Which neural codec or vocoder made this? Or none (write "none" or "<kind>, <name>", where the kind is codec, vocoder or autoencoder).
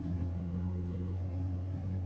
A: codec, SNAC